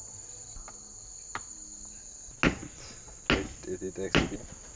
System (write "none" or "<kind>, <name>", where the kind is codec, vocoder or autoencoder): none